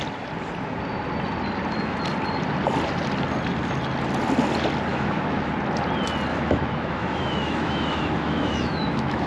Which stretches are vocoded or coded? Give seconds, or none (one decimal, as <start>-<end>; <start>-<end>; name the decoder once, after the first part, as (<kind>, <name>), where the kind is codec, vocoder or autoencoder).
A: 4.9-5.5 (autoencoder, DAC-VAE); 6.3-9.3